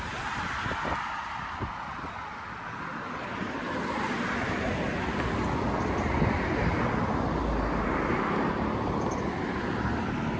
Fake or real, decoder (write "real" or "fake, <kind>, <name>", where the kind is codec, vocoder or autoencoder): real